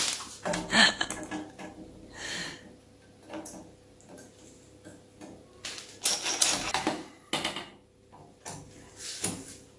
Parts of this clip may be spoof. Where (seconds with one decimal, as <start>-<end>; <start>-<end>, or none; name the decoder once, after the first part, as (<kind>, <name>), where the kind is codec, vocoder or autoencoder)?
none